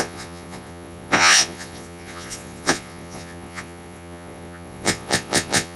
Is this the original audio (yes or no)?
no